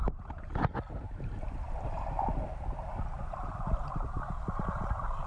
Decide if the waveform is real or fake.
real